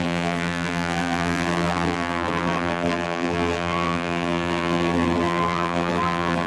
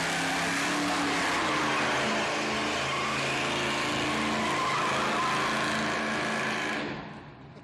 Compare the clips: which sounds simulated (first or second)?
first